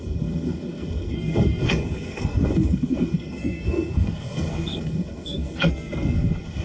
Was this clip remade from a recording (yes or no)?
yes